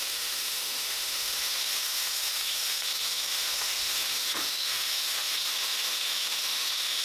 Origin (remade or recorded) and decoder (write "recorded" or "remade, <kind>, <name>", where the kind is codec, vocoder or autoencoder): remade, autoencoder, DAC-VAE